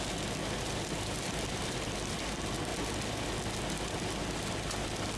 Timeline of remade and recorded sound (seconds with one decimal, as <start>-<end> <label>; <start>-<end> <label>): 0.0-5.2 recorded